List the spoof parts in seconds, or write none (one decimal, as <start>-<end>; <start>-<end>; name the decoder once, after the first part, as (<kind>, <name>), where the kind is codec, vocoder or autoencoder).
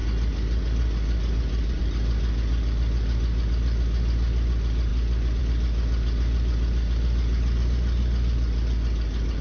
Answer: none